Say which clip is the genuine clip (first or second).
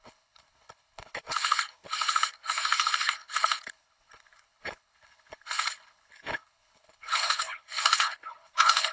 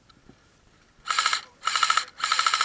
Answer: second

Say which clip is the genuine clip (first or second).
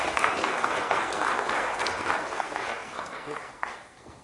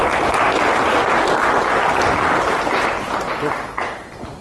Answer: second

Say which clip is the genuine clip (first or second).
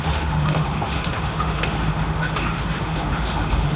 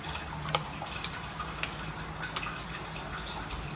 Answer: second